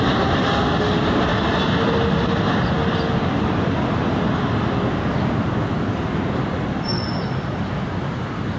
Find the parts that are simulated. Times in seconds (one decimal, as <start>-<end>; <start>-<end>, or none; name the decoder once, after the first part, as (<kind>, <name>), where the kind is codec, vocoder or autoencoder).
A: none